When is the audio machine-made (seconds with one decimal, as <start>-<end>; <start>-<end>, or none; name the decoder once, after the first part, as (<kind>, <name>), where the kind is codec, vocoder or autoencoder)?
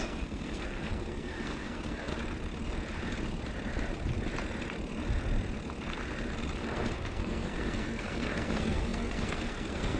0.0-2.1 (codec, SNAC); 6.6-10.0